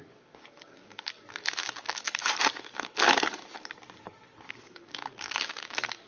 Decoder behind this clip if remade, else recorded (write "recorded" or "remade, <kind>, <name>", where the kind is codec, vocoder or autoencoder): remade, codec, DAC